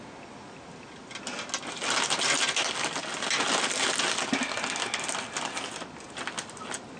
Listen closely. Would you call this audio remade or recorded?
recorded